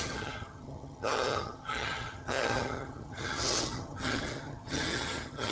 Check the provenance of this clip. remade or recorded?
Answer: remade